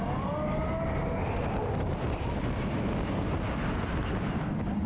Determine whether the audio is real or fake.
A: real